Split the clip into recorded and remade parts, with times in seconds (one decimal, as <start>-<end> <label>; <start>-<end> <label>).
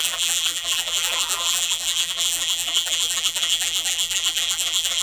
0.0-5.0 remade